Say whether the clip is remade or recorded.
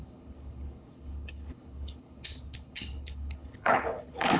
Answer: remade